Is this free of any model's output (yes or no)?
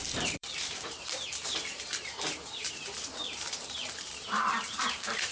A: no